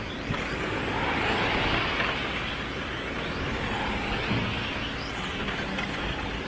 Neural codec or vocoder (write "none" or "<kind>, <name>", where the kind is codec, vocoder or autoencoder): none